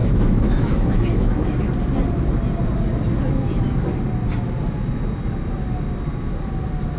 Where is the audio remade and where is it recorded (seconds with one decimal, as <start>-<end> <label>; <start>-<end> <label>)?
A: 0.0-1.6 remade; 1.6-7.0 recorded